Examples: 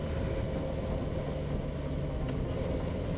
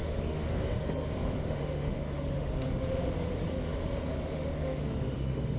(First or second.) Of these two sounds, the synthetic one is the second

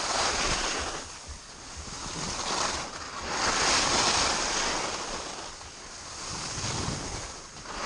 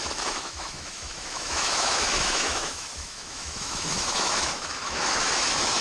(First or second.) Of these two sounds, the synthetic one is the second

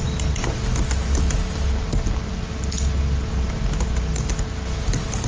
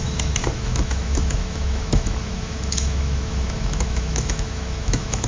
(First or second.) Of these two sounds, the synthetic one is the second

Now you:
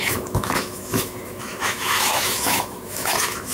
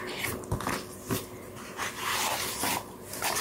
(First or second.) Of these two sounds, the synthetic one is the first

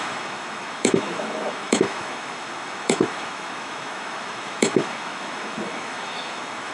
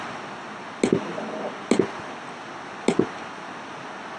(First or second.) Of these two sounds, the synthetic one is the first